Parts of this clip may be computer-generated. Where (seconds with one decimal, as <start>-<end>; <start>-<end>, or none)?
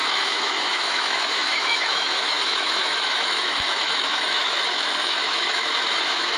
0.0-6.4